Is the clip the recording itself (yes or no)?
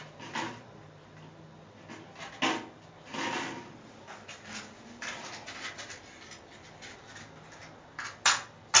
yes